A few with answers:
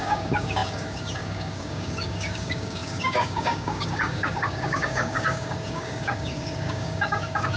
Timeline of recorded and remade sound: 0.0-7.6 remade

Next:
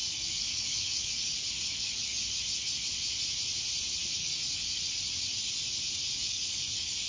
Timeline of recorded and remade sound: 0.0-2.4 remade; 2.4-4.2 recorded; 4.2-4.8 remade; 4.8-6.2 recorded; 6.2-7.1 remade

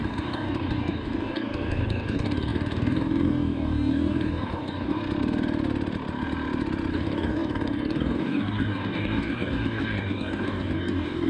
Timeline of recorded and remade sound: 0.0-5.0 remade; 5.0-6.9 recorded; 6.9-11.3 remade

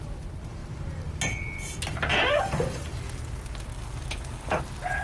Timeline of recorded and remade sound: 0.0-3.7 recorded; 3.7-4.6 remade; 4.6-5.0 recorded